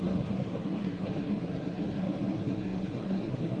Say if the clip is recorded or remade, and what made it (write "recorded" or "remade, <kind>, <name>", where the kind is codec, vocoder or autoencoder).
remade, codec, SNAC